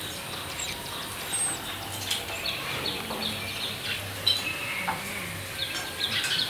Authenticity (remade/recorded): recorded